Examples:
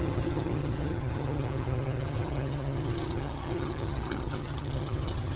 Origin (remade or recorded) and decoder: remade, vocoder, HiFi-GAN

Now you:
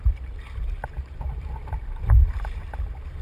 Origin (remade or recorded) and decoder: remade, vocoder, BigVGAN v2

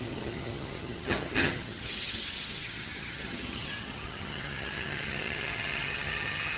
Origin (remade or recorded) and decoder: remade, vocoder, HiFi-GAN